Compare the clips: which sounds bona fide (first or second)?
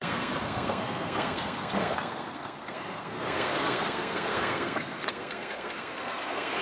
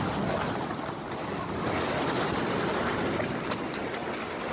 second